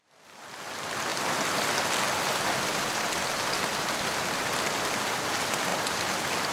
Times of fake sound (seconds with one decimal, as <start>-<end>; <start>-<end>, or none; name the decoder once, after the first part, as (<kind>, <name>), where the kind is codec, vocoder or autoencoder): none